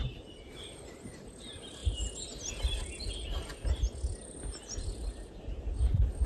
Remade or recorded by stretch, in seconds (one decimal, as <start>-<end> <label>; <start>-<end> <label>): 0.0-6.3 recorded

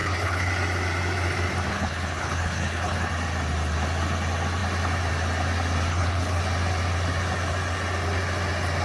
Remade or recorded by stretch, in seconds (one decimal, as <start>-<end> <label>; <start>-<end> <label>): 0.0-0.5 remade; 0.5-1.7 recorded; 1.7-3.1 remade; 3.1-5.9 recorded; 5.9-6.4 remade; 6.4-8.8 recorded

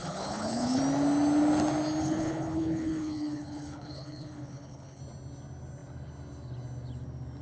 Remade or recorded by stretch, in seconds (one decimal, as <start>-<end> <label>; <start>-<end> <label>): 0.0-0.8 remade; 0.8-2.0 recorded; 2.0-5.0 remade; 5.0-7.4 recorded

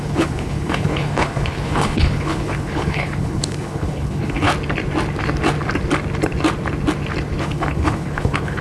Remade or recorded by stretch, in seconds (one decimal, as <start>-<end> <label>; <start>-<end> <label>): 0.0-4.5 remade; 4.5-7.4 recorded; 7.4-8.6 remade

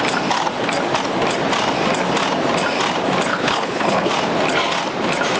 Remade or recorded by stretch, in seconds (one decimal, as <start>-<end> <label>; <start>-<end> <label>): 0.0-3.3 recorded; 3.3-4.1 remade; 4.1-5.4 recorded

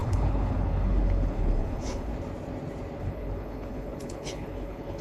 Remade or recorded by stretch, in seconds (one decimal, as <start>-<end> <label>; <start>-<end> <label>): 0.0-2.1 remade; 2.1-3.0 recorded; 3.0-5.0 remade

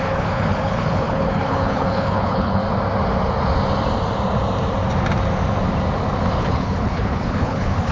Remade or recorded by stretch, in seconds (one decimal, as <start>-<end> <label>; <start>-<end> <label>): 0.0-2.6 remade; 2.6-6.3 recorded; 6.3-7.9 remade

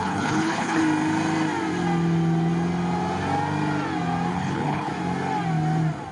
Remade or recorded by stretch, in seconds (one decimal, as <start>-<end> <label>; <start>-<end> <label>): 0.0-0.8 remade; 0.8-4.3 recorded; 4.3-4.9 remade; 4.9-6.1 recorded